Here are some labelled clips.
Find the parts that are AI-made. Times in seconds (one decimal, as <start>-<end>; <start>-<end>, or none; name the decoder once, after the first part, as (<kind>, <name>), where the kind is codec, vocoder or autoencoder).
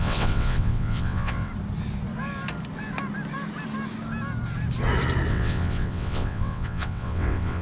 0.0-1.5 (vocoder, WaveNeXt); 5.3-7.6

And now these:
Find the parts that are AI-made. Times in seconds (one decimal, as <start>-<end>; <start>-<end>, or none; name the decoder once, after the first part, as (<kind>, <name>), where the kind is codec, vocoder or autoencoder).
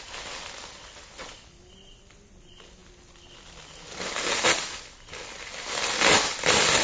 none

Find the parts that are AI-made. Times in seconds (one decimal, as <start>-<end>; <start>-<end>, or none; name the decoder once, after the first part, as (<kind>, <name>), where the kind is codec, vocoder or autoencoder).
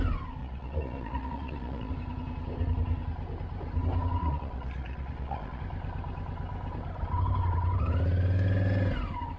0.4-1.9 (vocoder, Vocos); 4.2-5.6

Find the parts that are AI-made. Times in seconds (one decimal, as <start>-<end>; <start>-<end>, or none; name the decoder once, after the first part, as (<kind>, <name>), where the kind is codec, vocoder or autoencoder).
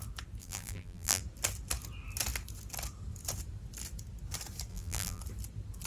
0.4-1.2 (vocoder, BigVGAN v2); 4.7-5.2